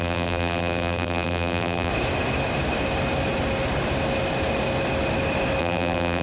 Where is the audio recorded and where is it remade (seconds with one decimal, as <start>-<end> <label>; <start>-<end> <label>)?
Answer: 0.0-1.9 remade; 1.9-5.6 recorded; 5.6-6.2 remade